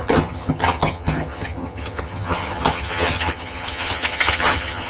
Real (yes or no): no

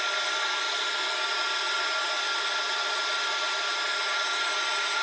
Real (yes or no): yes